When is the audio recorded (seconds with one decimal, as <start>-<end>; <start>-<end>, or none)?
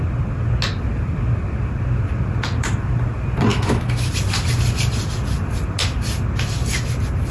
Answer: 0.0-3.5; 4.1-7.3